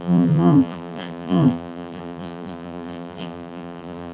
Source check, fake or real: fake